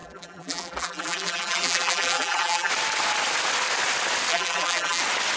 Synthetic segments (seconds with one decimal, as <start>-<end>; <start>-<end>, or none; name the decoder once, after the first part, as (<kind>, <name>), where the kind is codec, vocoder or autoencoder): 0.0-2.7 (vocoder, BigVGAN v2); 4.3-5.0